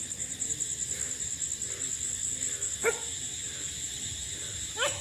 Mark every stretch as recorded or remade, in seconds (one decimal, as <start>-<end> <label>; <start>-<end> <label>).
0.0-5.0 recorded